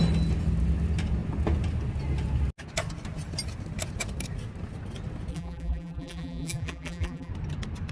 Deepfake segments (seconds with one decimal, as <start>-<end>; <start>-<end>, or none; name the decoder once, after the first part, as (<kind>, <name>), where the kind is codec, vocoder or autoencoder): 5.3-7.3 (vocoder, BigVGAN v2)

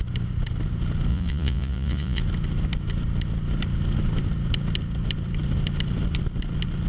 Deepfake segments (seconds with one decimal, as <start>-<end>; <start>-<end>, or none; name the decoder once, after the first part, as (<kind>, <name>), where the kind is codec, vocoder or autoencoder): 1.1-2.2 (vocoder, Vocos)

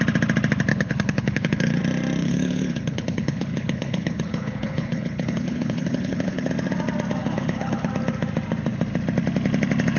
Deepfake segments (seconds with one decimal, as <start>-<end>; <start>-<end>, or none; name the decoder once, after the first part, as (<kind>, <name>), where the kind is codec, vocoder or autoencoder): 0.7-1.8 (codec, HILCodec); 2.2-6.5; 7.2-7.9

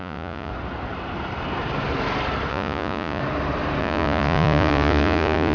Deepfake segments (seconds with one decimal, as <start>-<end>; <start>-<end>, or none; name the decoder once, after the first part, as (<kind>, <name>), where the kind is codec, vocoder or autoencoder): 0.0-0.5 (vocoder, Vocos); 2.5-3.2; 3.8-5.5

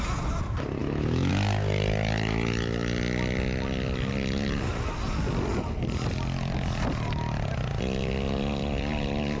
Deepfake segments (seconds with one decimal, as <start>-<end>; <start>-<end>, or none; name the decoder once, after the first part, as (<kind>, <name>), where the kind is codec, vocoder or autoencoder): 0.8-1.3 (autoencoder, DAC-VAE)

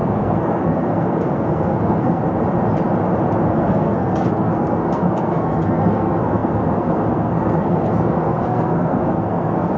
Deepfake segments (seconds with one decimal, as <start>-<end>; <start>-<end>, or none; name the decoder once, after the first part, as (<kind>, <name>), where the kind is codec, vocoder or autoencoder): 0.0-2.2 (codec, SNAC); 3.5-9.8

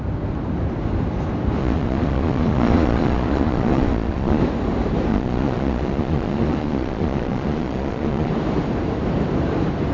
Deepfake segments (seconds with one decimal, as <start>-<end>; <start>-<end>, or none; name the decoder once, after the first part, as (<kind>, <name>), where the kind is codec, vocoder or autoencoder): 1.6-4.4 (vocoder, Vocos); 5.1-8.3

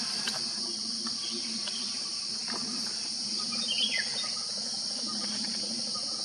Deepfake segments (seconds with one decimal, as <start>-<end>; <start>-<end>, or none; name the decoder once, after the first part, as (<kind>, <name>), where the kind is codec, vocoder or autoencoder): 0.0-2.4 (vocoder, BigVGAN v2); 3.3-6.2